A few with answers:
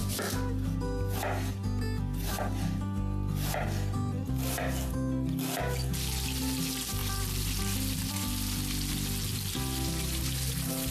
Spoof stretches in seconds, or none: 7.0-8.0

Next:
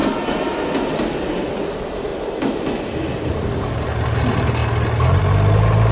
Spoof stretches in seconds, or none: none